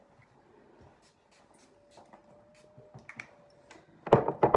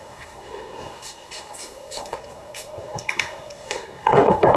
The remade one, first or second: second